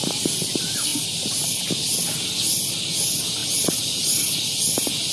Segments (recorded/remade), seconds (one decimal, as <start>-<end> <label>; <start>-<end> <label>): 0.0-5.1 recorded